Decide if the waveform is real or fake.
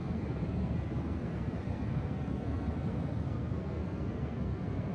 fake